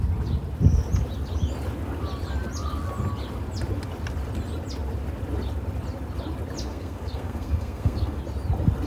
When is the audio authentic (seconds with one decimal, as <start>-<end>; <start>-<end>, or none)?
0.0-6.7; 8.2-8.9